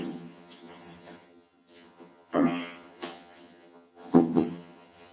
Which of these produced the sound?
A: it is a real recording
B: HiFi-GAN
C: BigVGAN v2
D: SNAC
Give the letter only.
B